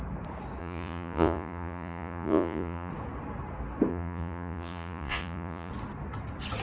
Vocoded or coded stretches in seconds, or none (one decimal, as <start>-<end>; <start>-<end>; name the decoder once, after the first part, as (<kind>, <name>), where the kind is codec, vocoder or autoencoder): 0.6-2.9 (vocoder, Vocos); 3.9-5.7